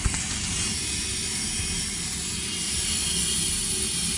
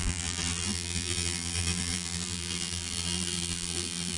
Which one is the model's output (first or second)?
second